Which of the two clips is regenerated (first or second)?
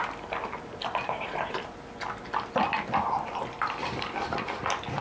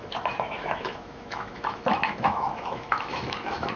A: second